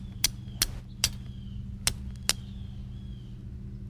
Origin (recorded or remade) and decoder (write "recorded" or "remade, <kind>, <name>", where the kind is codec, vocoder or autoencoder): recorded